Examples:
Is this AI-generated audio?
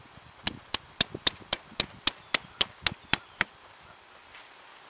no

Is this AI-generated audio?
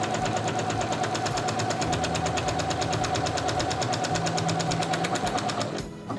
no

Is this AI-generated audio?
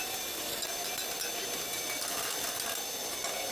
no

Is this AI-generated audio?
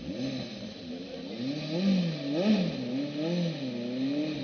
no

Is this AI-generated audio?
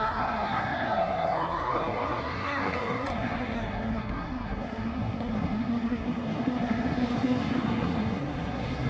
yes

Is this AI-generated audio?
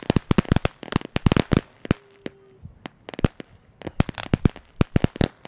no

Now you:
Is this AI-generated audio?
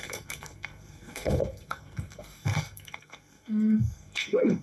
yes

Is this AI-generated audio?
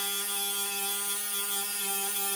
no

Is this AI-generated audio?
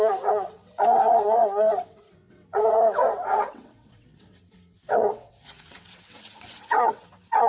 yes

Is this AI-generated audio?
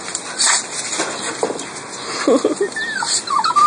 no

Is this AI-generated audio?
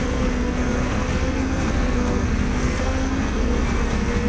yes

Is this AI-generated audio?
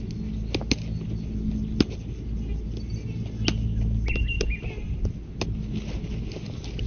no